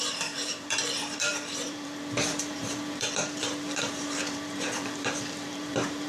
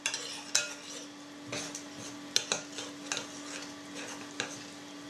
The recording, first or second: second